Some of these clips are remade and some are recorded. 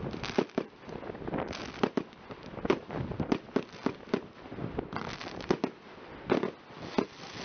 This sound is recorded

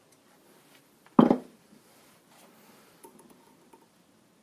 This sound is remade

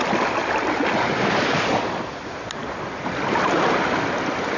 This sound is recorded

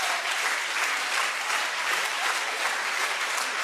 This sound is recorded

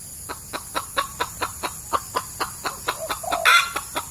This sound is recorded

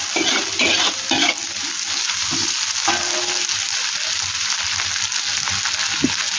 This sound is recorded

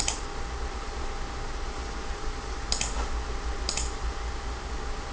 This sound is recorded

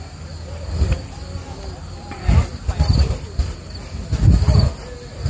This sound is recorded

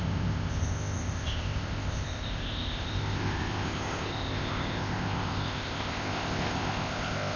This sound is remade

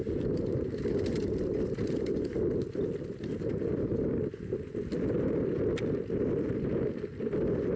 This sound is recorded